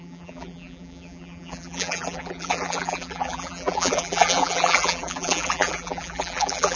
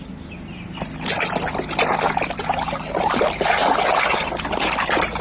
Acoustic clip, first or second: second